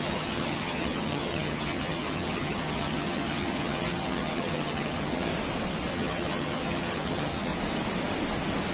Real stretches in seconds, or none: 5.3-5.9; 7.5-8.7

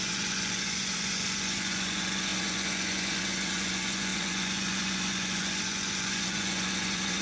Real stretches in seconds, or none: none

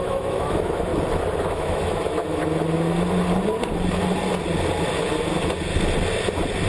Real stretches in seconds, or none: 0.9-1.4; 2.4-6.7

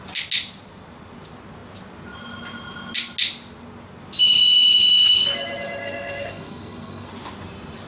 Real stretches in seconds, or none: 0.0-5.8; 7.1-7.9

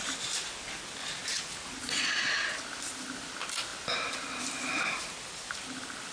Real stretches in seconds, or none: 0.0-1.8; 2.5-6.1

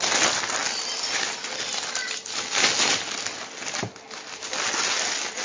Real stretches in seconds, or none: 0.0-5.4